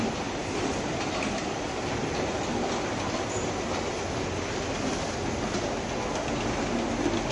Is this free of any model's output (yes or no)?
yes